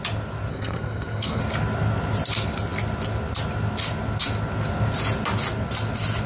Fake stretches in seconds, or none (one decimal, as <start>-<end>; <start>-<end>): 0.5-1.4